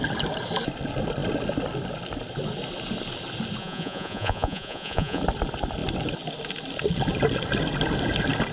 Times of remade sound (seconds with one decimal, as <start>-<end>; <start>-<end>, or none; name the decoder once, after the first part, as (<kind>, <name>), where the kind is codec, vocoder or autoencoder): 3.6-5.2 (vocoder, Vocos)